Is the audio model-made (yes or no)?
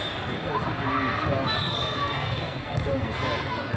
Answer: yes